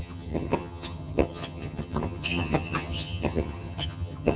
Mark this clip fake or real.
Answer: fake